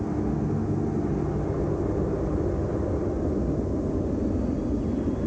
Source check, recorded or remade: recorded